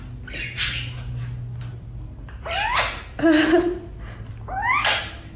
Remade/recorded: recorded